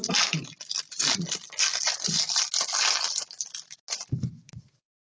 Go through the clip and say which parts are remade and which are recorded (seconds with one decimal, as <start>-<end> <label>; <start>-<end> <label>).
0.0-5.0 recorded